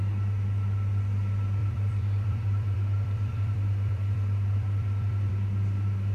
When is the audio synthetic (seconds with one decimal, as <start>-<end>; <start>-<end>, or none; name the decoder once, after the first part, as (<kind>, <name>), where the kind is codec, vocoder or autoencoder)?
1.6-5.3 (vocoder, BigVGAN v2)